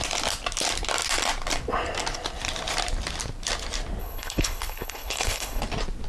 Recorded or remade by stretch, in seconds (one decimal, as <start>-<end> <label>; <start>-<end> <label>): 0.0-4.0 recorded; 4.0-5.6 remade; 5.6-6.1 recorded